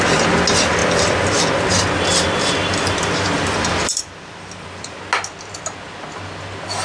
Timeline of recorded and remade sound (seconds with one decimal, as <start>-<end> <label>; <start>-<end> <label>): 0.0-0.8 recorded; 0.8-1.7 remade; 1.7-2.1 recorded; 2.1-5.0 remade; 5.0-6.8 recorded